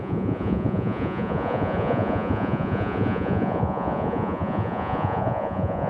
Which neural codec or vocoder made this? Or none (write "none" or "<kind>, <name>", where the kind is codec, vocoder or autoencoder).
vocoder, Vocos